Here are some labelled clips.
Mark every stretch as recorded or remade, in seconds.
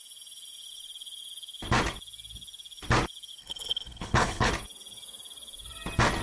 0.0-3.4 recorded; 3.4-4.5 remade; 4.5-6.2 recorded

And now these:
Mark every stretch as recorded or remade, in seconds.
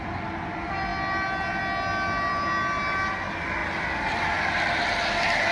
0.0-5.5 recorded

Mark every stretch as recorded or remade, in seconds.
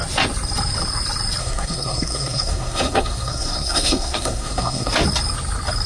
0.0-1.4 recorded; 1.4-4.9 remade; 4.9-5.9 recorded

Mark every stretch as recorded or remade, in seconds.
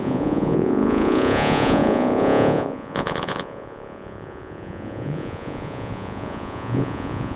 0.0-7.4 remade